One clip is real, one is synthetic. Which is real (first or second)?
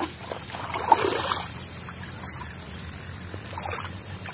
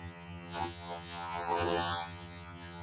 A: first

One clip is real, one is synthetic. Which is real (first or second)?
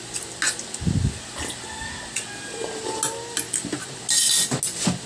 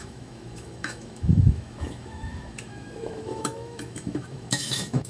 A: first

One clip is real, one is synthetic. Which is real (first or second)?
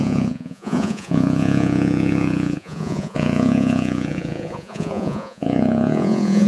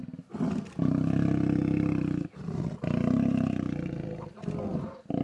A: second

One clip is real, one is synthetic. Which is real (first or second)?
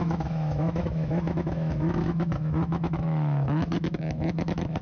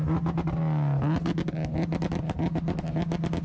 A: second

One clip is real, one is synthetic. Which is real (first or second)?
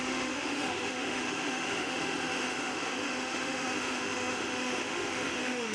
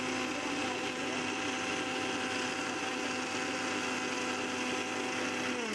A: second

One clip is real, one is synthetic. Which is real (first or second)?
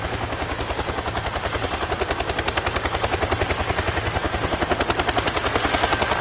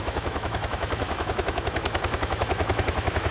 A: first